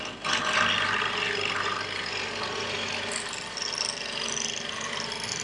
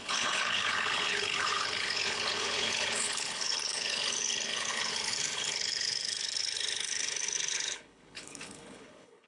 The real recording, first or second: first